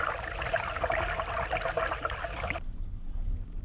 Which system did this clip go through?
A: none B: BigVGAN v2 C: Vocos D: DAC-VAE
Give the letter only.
A